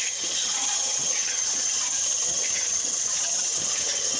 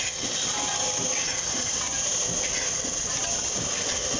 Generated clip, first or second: first